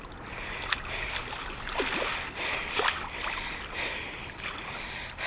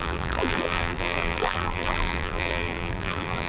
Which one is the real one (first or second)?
first